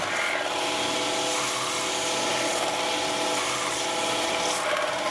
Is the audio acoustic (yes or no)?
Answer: yes